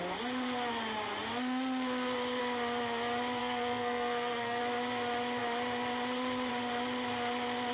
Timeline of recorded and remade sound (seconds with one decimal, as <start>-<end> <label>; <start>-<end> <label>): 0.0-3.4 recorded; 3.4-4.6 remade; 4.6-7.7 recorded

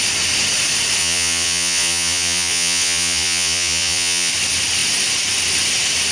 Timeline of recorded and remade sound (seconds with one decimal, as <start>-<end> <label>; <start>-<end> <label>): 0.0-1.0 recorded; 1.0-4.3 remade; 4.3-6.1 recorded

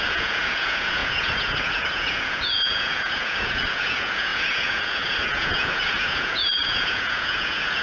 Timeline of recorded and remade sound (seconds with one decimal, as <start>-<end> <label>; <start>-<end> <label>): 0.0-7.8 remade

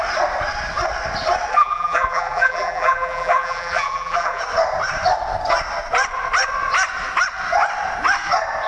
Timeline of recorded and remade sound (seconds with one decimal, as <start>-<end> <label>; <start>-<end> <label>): 0.0-1.5 recorded; 1.5-4.4 remade; 4.4-8.7 recorded

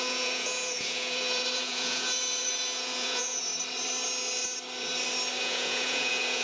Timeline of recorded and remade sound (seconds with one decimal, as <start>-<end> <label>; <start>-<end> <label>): 0.0-3.5 remade; 3.5-5.4 recorded; 5.4-6.4 remade

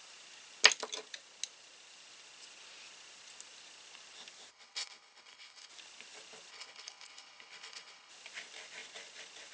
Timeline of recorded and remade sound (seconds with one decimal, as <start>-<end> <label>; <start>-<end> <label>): 0.0-4.5 recorded; 4.5-5.7 remade; 5.7-6.5 recorded; 6.5-8.1 remade; 8.1-9.5 recorded

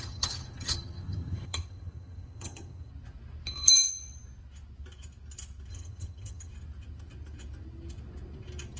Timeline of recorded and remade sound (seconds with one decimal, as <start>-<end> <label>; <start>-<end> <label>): 0.0-2.9 remade; 2.9-5.7 recorded; 5.7-6.5 remade; 6.5-8.8 recorded

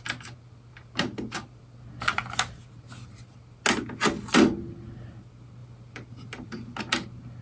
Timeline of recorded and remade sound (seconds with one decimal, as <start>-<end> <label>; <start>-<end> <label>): 0.0-7.4 recorded